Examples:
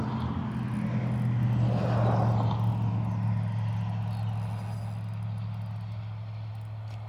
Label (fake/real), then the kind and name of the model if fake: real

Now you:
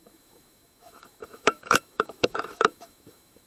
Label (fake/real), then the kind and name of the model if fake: fake, autoencoder, DAC-VAE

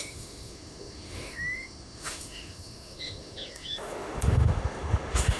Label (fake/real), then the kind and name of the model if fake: fake, autoencoder, DAC-VAE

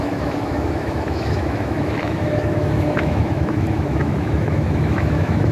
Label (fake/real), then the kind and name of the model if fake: fake, autoencoder, DAC-VAE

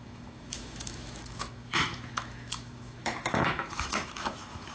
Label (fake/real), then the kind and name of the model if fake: fake, autoencoder, DAC-VAE